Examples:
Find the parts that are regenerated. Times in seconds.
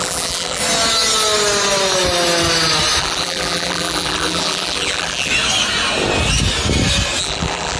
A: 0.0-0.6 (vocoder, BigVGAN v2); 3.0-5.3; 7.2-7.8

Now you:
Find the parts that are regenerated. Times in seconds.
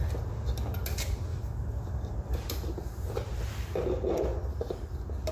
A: 1.3-1.9 (autoencoder, DAC-VAE)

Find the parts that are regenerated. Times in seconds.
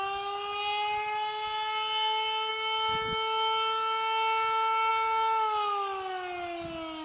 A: none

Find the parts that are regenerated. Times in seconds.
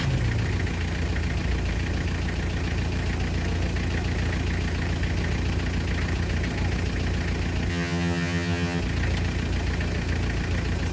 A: 7.7-8.8 (vocoder, HiFi-GAN)